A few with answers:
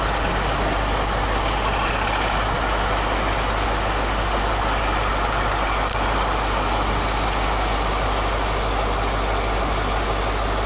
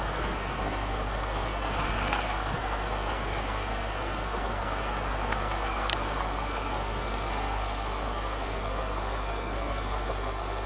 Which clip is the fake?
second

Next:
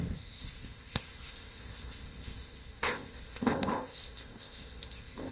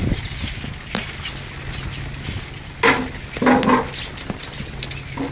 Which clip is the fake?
first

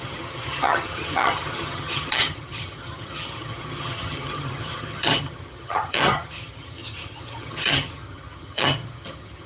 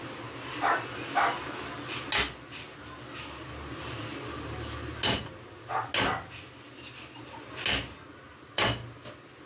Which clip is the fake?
first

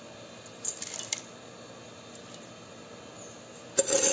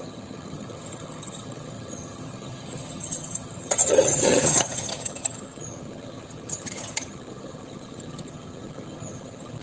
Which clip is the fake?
second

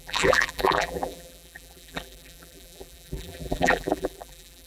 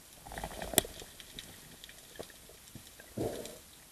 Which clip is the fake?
first